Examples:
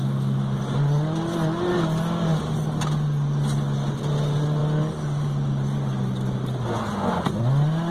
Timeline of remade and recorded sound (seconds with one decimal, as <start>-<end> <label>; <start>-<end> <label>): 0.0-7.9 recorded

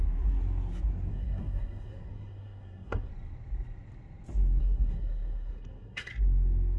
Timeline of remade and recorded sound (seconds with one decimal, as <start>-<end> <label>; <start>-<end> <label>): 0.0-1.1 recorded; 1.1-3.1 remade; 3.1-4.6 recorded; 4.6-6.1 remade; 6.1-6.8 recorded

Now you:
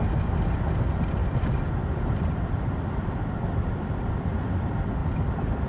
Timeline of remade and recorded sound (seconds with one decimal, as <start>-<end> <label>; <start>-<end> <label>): 0.0-1.2 recorded; 1.2-4.1 remade; 4.1-5.0 recorded; 5.0-5.7 remade

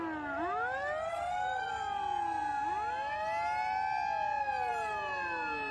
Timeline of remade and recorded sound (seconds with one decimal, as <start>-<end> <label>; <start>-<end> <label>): 0.0-1.1 recorded; 1.1-1.7 remade; 1.7-5.7 recorded